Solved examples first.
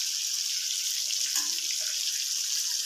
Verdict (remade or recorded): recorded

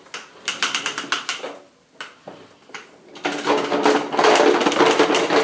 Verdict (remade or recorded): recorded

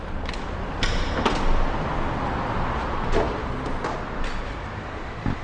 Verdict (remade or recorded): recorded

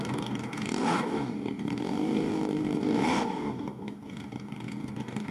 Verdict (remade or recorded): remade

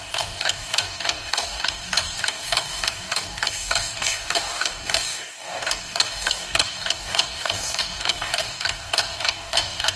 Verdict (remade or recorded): remade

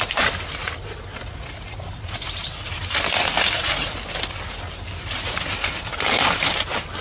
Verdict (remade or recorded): recorded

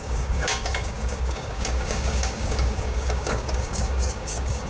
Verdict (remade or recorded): remade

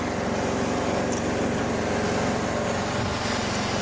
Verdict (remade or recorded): recorded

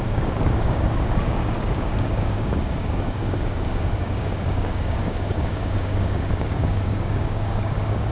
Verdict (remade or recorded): remade